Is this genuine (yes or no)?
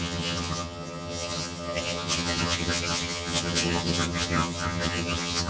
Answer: no